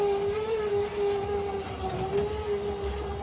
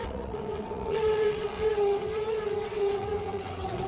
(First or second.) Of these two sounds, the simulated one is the second